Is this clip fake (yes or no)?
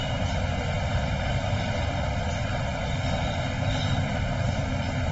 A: yes